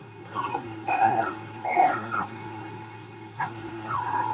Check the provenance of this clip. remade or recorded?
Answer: remade